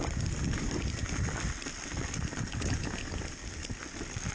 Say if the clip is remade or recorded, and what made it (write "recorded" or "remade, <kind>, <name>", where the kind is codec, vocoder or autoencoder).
recorded